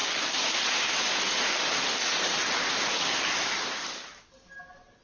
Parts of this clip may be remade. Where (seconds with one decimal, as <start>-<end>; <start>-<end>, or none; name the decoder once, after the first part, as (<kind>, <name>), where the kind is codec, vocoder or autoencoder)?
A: 0.0-0.7 (vocoder, BigVGAN v2); 2.3-3.4

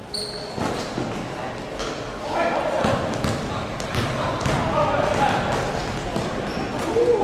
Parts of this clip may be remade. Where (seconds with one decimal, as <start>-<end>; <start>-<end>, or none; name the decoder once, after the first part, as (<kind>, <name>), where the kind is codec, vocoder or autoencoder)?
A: none